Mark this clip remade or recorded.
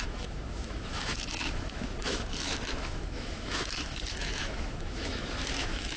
remade